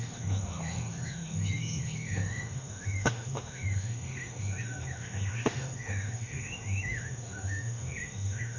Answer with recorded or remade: remade